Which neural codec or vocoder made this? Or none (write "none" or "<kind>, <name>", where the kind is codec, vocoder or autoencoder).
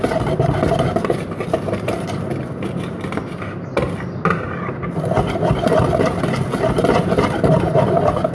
none